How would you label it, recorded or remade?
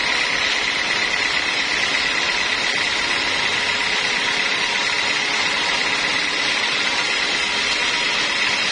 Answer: recorded